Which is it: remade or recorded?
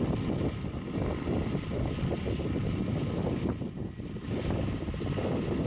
recorded